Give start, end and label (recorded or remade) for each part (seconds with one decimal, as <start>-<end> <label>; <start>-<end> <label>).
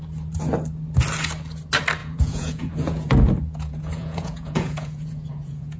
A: 0.0-2.0 recorded; 2.0-5.8 remade